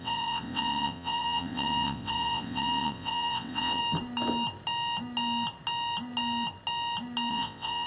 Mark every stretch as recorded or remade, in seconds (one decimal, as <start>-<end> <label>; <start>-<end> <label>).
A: 0.0-3.8 remade; 3.8-7.3 recorded; 7.3-7.9 remade